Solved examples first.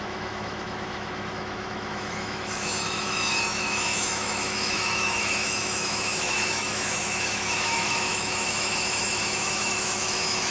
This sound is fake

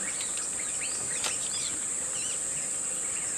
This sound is real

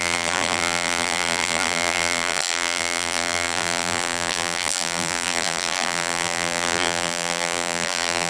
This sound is fake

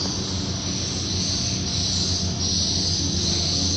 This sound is real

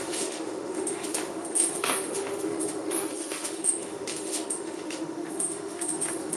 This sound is fake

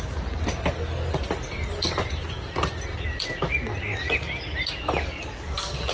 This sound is real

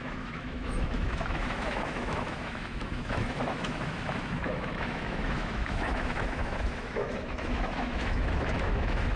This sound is fake